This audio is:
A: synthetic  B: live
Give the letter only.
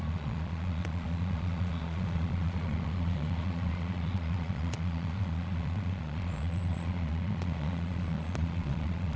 A